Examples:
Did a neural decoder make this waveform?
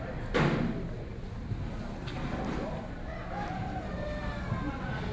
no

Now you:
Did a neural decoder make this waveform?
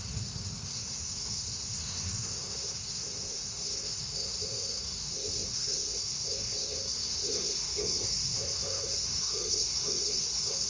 yes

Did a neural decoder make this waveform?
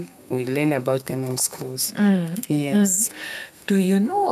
yes